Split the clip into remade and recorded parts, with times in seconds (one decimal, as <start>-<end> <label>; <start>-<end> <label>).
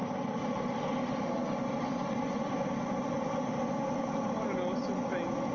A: 0.0-5.5 recorded